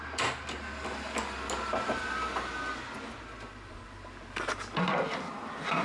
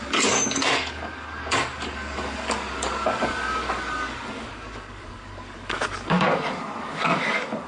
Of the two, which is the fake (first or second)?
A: second